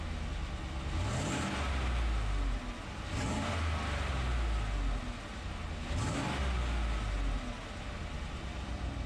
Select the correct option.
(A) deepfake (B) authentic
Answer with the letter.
B